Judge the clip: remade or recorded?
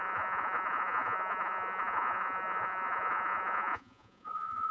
remade